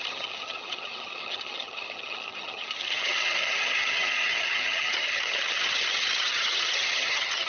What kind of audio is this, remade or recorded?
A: remade